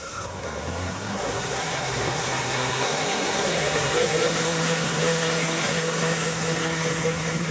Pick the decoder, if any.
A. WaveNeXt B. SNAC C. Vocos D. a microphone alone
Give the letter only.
B